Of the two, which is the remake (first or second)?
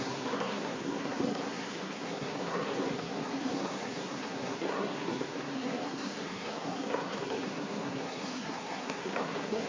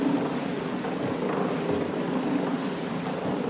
first